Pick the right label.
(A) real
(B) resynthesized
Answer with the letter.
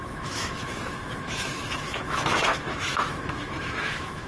B